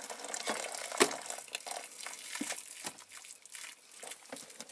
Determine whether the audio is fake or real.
real